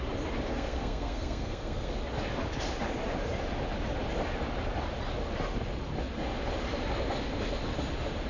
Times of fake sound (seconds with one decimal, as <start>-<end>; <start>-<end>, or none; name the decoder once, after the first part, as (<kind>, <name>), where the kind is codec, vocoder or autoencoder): 0.5-1.9 (codec, SNAC)